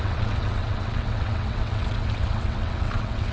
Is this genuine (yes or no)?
no